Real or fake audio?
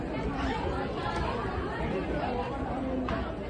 real